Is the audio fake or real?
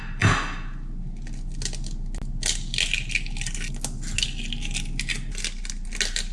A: real